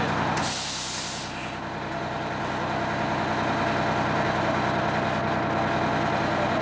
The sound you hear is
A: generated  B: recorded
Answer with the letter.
B